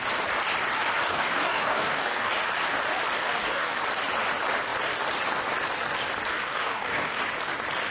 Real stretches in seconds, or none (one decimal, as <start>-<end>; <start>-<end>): 0.0-1.1; 2.3-3.2; 3.8-6.3; 7.2-7.9